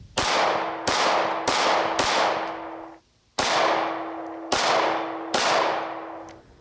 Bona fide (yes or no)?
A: yes